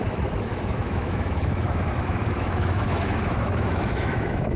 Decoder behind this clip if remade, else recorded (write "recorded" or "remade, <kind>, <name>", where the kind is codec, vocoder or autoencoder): remade, autoencoder, DAC-VAE